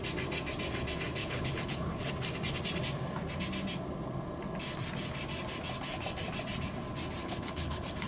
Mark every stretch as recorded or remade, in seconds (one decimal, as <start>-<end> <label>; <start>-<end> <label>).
0.0-1.2 recorded; 1.2-2.1 remade; 2.1-7.2 recorded; 7.2-8.1 remade